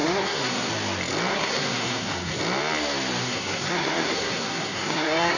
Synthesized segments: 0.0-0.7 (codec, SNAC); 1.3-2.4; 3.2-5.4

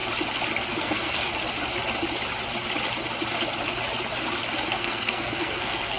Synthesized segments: 0.7-1.3 (codec, SNAC); 4.7-6.0

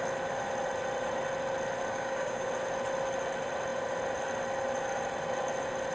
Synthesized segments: 1.9-2.5 (codec, DAC)

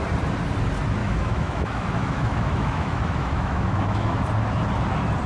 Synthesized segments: 1.0-4.2 (autoencoder, DAC-VAE)

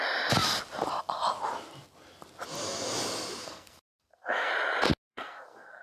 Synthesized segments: 3.4-4.5 (codec, SNAC); 5.1-5.8

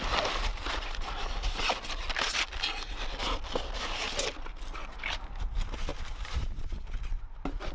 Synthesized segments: 0.5-1.6 (vocoder, BigVGAN v2); 5.9-6.7

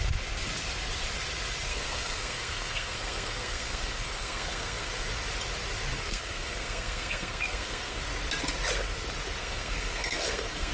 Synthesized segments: 1.7-4.9 (codec, SNAC); 5.9-8.0; 9.4-10.7